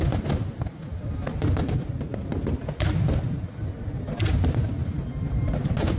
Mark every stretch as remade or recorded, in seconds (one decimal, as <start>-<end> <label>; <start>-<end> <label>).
0.0-6.0 recorded